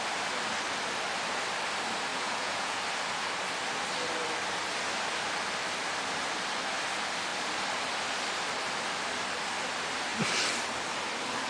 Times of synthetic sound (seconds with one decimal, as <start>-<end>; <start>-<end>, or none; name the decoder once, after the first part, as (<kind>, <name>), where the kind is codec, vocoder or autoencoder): 2.1-2.8 (vocoder, Vocos)